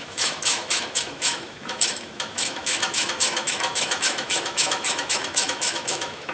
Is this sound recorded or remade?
remade